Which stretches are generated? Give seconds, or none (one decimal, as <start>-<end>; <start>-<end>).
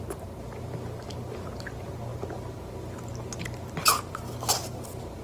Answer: none